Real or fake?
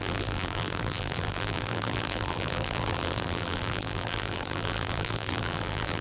fake